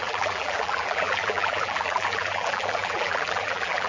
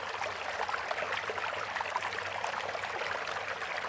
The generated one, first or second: first